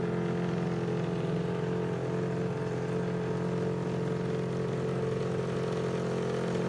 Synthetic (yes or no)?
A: no